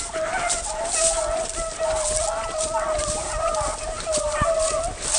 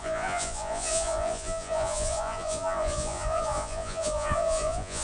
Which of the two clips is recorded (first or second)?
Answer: first